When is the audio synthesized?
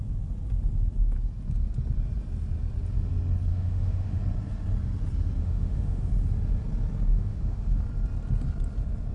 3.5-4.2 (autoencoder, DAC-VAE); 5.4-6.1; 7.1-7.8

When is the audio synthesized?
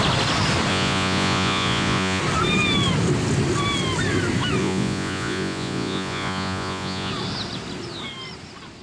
0.7-2.2 (vocoder, Vocos); 4.6-7.1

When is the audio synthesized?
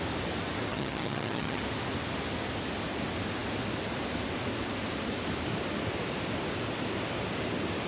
0.7-1.6 (vocoder, HiFi-GAN)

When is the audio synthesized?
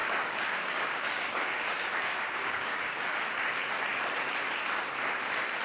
0.0-3.2 (codec, DAC)